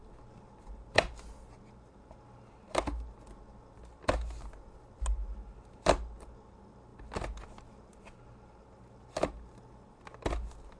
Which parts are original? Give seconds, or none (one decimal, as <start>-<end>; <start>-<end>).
0.0-10.8